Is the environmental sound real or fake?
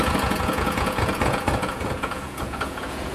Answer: fake